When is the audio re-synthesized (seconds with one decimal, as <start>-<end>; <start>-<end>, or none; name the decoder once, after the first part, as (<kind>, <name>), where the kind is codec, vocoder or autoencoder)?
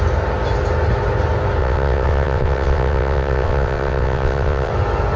1.6-4.7 (vocoder, WaveNeXt)